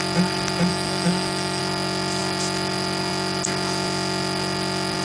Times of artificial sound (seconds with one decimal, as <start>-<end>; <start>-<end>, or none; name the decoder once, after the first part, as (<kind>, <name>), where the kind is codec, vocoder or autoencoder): 0.7-1.6 (autoencoder, DAC-VAE)

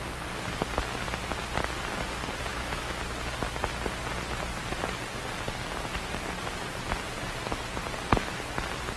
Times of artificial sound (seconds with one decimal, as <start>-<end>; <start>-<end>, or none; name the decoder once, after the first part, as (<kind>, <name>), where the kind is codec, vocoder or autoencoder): 2.5-3.0 (autoencoder, DAC-VAE)